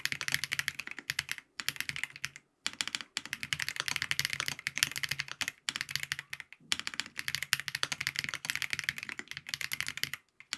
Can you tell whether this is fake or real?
real